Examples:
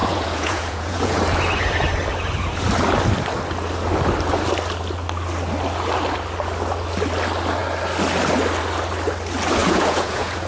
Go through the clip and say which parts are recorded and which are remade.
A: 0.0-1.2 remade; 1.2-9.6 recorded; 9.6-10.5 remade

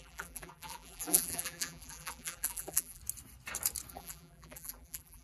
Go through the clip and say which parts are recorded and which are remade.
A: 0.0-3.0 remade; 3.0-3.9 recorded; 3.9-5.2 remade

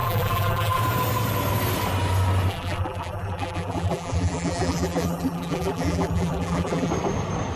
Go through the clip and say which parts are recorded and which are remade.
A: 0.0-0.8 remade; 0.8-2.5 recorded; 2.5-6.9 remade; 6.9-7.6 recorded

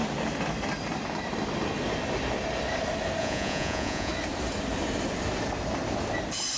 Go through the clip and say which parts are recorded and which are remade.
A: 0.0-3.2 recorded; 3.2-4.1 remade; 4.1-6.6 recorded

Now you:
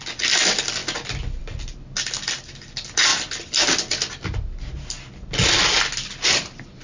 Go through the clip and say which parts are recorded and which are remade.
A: 0.0-6.8 recorded

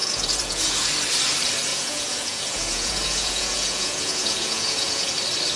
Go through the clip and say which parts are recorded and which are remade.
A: 0.0-0.9 remade; 0.9-1.7 recorded; 1.7-5.1 remade; 5.1-5.6 recorded